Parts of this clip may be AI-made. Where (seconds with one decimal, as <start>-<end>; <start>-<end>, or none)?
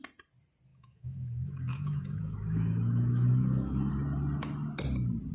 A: 0.7-3.9